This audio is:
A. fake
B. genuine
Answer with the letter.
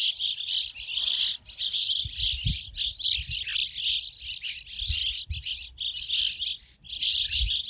B